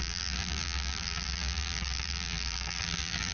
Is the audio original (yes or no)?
no